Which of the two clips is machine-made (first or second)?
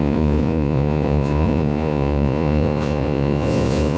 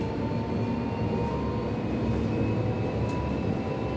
first